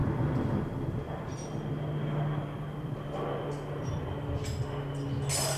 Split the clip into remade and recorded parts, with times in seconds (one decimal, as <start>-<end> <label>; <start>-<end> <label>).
0.0-1.0 remade; 1.0-2.4 recorded; 2.4-4.1 remade; 4.1-5.6 recorded